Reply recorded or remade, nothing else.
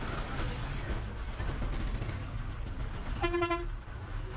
recorded